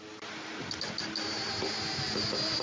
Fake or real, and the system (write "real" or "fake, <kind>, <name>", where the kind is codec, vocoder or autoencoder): real